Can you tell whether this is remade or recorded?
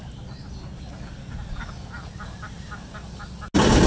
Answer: recorded